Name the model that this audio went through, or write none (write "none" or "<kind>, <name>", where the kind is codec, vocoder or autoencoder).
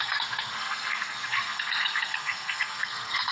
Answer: codec, SNAC